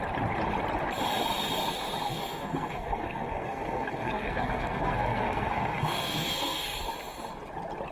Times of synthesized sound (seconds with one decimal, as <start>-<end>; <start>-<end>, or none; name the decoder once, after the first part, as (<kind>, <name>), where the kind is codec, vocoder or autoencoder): 2.1-6.8 (codec, SNAC)